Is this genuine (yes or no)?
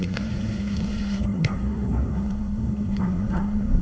no